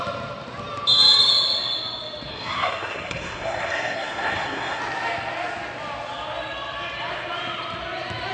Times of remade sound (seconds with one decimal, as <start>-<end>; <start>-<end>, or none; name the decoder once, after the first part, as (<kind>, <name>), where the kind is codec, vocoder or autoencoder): 2.3-4.8 (codec, SNAC)